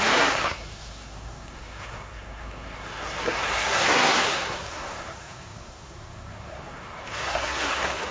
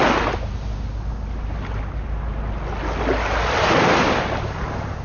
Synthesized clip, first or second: first